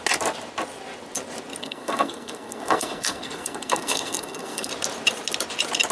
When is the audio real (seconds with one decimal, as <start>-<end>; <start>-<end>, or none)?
0.0-1.6; 4.7-5.9